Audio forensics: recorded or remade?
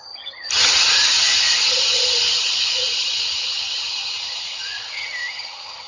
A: remade